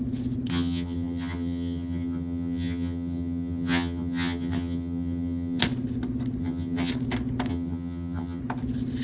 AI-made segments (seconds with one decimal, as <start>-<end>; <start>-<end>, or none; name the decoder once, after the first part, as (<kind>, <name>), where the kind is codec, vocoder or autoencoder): 0.5-5.6 (vocoder, HiFi-GAN); 6.4-6.9; 7.5-8.4